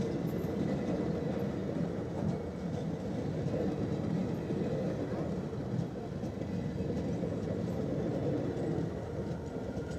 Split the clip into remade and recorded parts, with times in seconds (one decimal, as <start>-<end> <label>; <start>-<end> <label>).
0.0-10.0 recorded

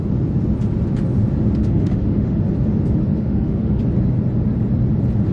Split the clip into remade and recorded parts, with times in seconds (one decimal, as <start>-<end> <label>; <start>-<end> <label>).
0.0-1.6 recorded; 1.6-2.4 remade; 2.4-3.0 recorded; 3.0-3.8 remade; 3.8-5.3 recorded

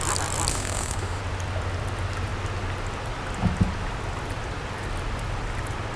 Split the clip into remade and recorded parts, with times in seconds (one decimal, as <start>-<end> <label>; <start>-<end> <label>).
0.0-0.5 recorded; 0.5-1.2 remade; 1.2-6.0 recorded

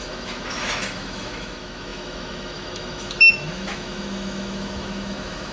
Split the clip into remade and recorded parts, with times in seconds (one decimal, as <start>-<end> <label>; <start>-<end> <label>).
0.0-5.5 remade